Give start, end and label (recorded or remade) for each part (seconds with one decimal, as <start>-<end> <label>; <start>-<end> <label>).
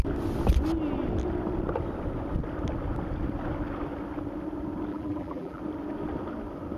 0.0-4.9 recorded; 4.9-5.6 remade; 5.6-6.8 recorded